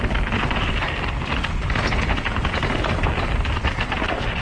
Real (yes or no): yes